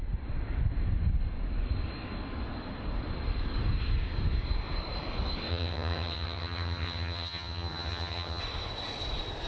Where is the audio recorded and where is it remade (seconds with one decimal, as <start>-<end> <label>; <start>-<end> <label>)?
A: 0.0-5.5 recorded; 5.5-8.4 remade; 8.4-9.5 recorded